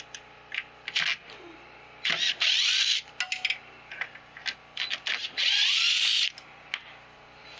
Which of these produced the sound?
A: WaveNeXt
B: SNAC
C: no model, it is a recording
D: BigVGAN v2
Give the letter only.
C